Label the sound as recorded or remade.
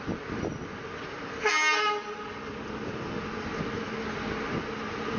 recorded